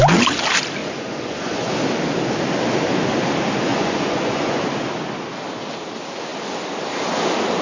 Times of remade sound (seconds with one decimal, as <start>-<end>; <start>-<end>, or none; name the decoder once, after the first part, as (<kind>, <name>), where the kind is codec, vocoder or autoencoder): 0.8-1.7 (vocoder, Vocos); 3.7-4.6